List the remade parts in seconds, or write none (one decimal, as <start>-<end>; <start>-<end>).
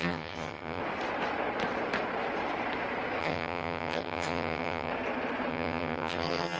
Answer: 0.0-0.8; 3.2-4.9; 5.5-6.6